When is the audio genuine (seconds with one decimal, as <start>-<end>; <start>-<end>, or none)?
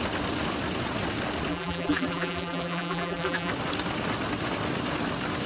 0.0-1.5; 3.5-5.5